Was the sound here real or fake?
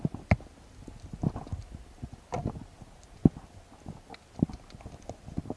real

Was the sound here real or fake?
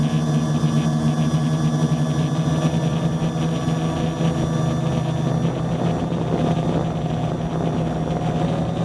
real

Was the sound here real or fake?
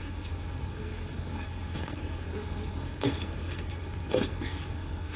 fake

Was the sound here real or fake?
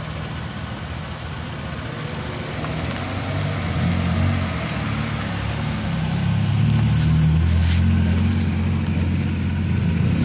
real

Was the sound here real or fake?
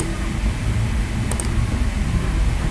fake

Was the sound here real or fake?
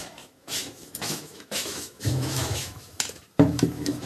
fake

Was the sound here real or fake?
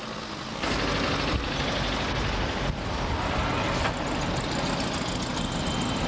real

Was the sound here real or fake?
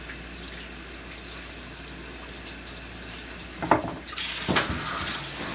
real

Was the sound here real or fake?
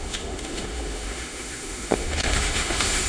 fake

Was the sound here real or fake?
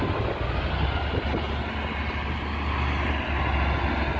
real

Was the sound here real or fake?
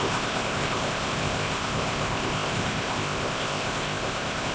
fake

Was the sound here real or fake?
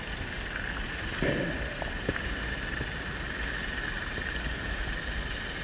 real